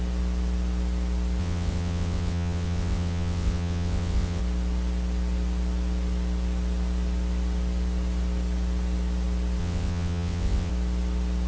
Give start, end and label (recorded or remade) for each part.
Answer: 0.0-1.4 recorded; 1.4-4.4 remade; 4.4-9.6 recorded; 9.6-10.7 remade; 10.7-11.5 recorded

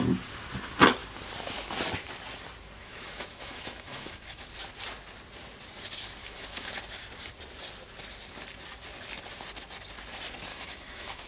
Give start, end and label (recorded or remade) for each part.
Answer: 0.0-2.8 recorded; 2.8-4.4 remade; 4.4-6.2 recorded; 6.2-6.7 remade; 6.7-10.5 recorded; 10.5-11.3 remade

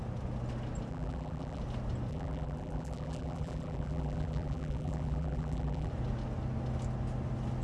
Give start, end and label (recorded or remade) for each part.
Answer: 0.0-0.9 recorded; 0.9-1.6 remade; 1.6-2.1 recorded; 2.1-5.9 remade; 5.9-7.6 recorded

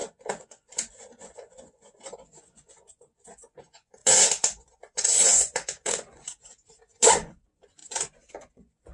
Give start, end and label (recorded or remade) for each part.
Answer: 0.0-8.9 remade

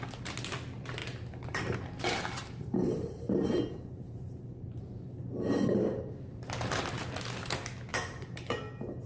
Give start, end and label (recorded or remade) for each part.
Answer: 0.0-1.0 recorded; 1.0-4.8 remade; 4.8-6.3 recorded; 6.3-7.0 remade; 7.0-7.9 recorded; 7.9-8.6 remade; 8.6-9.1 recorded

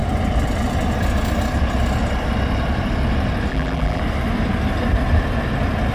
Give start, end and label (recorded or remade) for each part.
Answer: 0.0-3.5 recorded; 3.5-4.0 remade; 4.0-5.9 recorded